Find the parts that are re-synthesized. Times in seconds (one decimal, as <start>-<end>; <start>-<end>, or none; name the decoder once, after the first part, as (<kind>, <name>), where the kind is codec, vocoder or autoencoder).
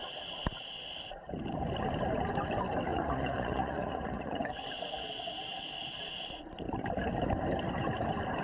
2.9-4.5 (vocoder, Vocos)